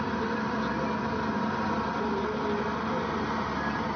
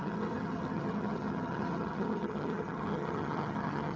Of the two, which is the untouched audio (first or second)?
first